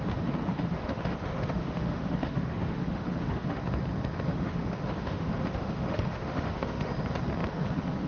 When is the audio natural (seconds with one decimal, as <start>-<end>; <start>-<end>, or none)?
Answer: 0.0-0.5; 3.6-4.3; 6.9-8.1